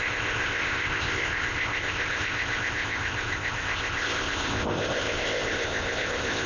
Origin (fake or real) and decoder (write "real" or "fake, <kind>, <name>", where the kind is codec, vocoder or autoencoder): fake, codec, ZipCodec